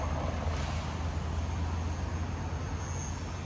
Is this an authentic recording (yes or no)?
yes